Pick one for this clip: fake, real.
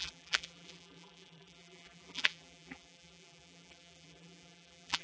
fake